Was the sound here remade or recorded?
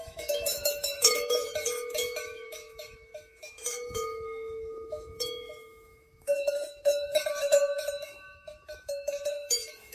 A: remade